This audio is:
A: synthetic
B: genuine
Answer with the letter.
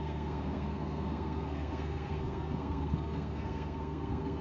A